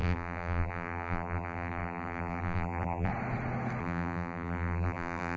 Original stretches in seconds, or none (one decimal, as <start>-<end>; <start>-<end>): 3.1-3.8